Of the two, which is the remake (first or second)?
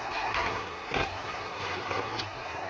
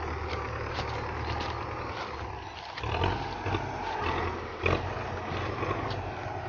first